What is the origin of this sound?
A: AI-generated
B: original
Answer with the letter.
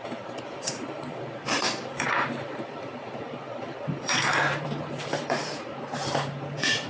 A